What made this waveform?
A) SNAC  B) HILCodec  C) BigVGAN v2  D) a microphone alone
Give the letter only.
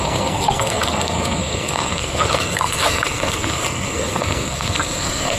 A